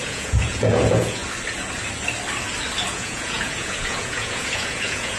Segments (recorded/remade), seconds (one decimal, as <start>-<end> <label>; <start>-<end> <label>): 0.0-1.2 remade; 1.2-2.9 recorded; 2.9-5.2 remade